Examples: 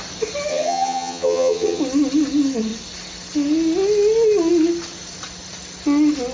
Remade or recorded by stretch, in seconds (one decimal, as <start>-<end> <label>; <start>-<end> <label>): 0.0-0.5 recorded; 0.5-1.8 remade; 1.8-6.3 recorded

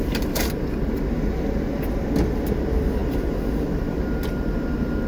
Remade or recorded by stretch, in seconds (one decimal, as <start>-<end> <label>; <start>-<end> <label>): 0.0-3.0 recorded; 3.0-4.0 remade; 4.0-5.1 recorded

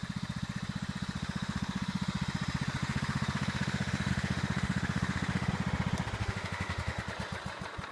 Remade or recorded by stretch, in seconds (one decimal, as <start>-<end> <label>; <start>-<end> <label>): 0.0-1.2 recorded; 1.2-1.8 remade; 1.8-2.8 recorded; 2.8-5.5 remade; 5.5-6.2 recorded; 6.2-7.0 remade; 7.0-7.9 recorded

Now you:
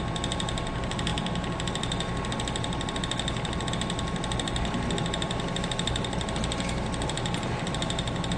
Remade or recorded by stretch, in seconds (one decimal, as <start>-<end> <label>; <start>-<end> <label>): 0.0-8.4 recorded